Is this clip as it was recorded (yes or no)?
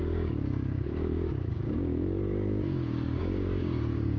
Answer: no